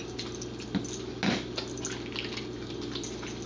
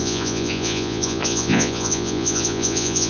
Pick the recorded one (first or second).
first